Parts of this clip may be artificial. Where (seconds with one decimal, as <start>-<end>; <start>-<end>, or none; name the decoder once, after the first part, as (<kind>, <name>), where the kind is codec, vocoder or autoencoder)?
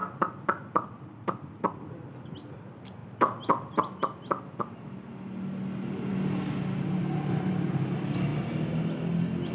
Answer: 0.0-2.1 (vocoder, BigVGAN v2); 3.0-4.0